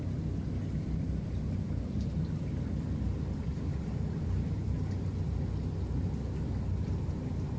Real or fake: real